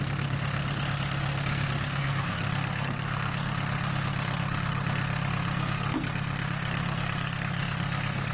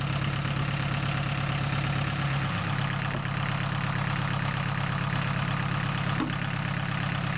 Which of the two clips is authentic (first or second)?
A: second